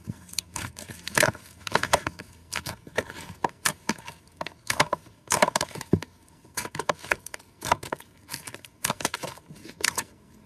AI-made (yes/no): yes